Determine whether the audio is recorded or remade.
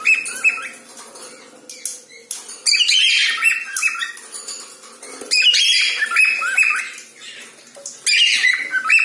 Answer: recorded